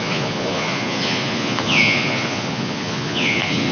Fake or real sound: fake